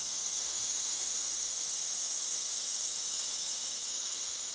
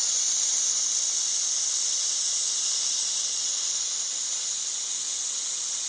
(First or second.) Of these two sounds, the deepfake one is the first